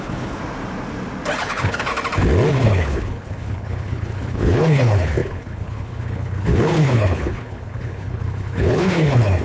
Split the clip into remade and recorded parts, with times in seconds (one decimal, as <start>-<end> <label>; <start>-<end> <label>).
0.0-0.4 remade; 0.4-1.4 recorded; 1.4-1.9 remade; 1.9-2.5 recorded; 2.5-9.4 remade